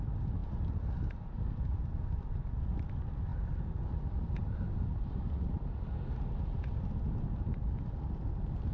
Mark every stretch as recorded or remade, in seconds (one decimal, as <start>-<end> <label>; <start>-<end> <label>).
0.0-8.7 recorded